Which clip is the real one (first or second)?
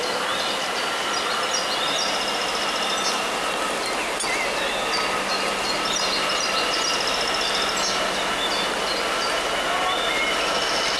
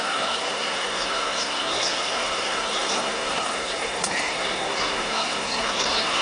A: first